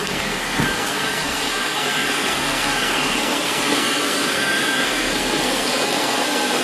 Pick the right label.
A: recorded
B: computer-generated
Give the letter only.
B